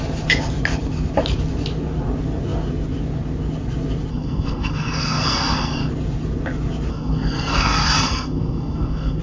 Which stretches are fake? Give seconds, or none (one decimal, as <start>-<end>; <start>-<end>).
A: 4.1-5.9; 6.9-9.2